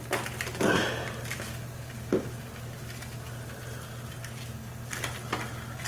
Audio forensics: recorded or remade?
recorded